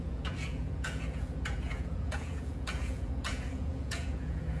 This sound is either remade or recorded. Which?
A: remade